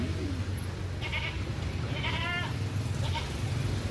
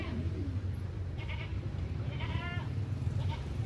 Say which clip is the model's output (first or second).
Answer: second